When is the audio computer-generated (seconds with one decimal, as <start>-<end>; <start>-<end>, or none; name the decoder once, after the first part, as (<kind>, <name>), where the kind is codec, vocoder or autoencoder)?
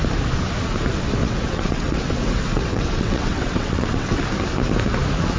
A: 1.2-4.2 (vocoder, WaveNeXt)